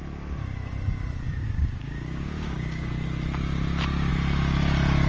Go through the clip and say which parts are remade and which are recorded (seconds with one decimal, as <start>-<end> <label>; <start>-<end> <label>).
0.0-1.4 recorded; 1.4-2.9 remade; 2.9-5.1 recorded